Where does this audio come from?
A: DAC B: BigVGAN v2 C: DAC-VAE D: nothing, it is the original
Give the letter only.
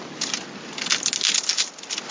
D